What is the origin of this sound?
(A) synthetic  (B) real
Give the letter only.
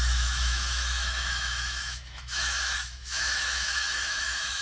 A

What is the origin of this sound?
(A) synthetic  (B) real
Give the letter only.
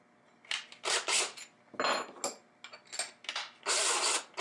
B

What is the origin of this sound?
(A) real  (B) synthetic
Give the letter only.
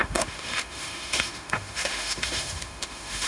B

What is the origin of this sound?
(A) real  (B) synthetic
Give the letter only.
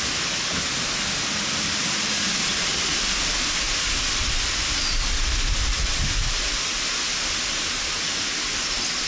A